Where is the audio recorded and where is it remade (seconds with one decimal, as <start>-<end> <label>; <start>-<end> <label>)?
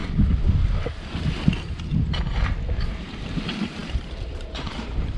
0.0-1.5 recorded; 1.5-1.9 remade; 1.9-2.8 recorded; 2.8-5.2 remade